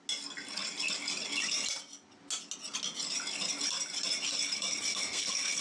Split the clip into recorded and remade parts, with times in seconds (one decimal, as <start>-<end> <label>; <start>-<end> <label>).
0.0-4.9 recorded; 4.9-5.6 remade